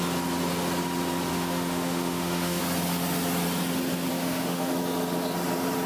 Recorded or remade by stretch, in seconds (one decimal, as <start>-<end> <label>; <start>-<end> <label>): 0.0-1.3 recorded; 1.3-2.6 remade; 2.6-4.1 recorded; 4.1-4.7 remade; 4.7-5.9 recorded